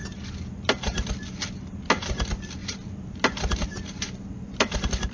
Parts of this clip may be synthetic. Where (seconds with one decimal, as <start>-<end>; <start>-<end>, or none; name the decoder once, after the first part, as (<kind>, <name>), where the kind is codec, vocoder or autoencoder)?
none